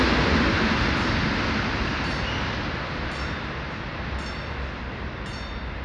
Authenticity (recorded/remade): recorded